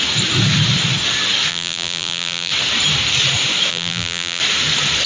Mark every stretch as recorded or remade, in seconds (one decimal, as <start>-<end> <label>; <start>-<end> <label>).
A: 0.0-1.5 recorded; 1.5-2.5 remade; 2.5-3.7 recorded; 3.7-4.4 remade; 4.4-5.1 recorded